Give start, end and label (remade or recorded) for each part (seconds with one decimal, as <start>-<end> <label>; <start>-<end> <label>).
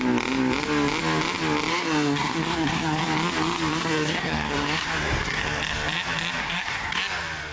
0.0-1.7 recorded; 1.7-3.0 remade; 3.0-3.7 recorded; 3.7-5.4 remade; 5.4-6.4 recorded; 6.4-7.0 remade; 7.0-7.5 recorded